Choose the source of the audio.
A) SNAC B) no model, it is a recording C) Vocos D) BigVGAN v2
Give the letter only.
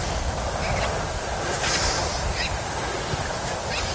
B